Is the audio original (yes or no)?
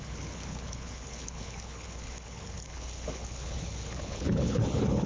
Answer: no